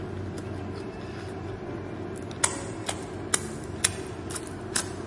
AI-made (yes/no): no